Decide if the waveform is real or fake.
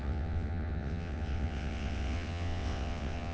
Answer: fake